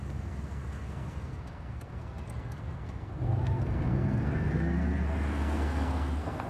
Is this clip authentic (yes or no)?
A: no